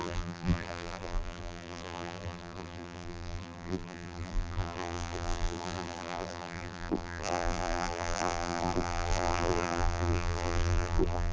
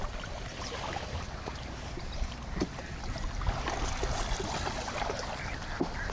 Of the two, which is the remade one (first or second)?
first